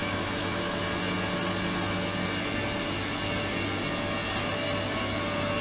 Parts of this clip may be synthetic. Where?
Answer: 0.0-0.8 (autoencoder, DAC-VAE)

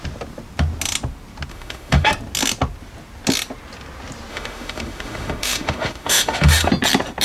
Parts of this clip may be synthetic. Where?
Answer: 1.5-2.1 (autoencoder, DAC-VAE); 4.3-6.7

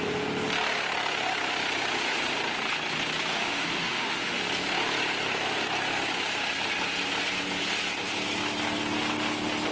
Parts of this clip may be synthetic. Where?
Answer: 3.3-4.4 (autoencoder, DAC-VAE)